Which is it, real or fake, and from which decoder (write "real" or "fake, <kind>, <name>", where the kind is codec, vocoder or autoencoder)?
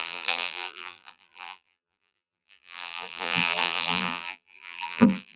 fake, vocoder, BigVGAN v2